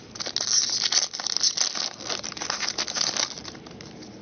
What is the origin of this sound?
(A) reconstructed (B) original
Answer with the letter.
B